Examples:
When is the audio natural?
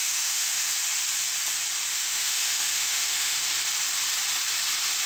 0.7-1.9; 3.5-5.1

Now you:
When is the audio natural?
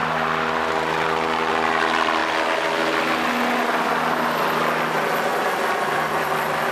1.5-5.3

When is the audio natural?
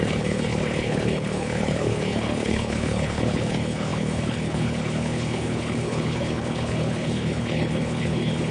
none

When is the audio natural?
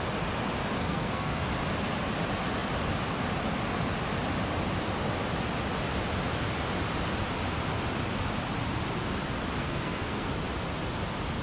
0.0-0.8; 1.5-9.6; 10.3-11.4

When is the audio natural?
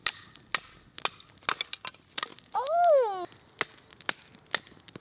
0.0-5.0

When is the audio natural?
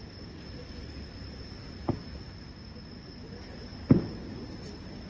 0.0-5.1